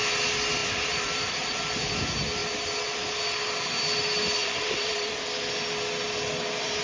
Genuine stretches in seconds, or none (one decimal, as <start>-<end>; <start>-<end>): 0.0-0.6; 1.9-4.4; 5.2-6.8